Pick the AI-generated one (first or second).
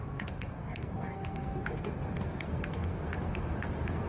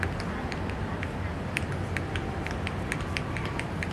first